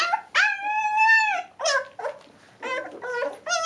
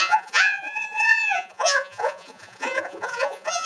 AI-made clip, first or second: second